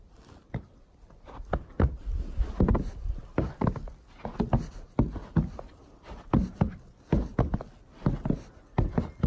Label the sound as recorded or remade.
recorded